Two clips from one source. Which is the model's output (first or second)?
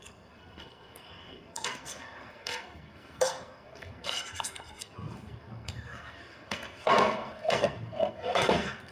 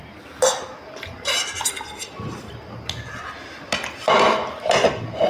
first